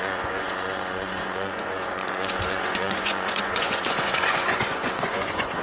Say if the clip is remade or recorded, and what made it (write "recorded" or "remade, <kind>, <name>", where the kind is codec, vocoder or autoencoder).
remade, vocoder, Vocos